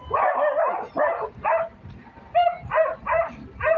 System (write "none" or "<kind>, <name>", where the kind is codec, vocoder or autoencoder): none